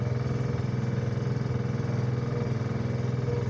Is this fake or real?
real